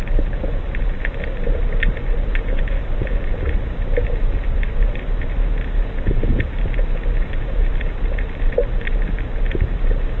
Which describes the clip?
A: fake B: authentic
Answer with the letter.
B